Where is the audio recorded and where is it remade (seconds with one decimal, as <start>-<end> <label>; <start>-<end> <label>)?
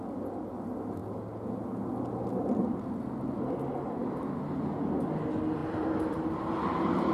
0.0-5.6 recorded; 5.6-7.1 remade